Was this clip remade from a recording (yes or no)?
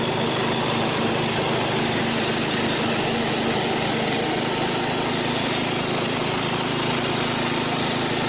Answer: no